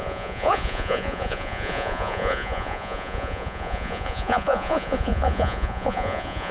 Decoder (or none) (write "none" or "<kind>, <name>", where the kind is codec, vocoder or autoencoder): vocoder, Vocos